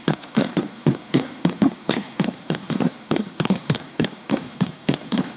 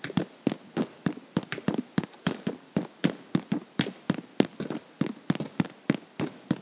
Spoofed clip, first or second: first